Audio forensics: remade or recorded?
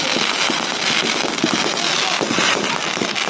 recorded